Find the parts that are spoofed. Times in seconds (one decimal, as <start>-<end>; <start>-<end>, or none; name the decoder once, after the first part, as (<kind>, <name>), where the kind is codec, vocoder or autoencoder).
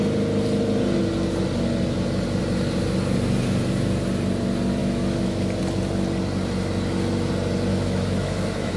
4.8-5.6 (autoencoder, DAC-VAE); 7.7-8.8